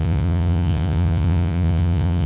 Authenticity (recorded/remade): remade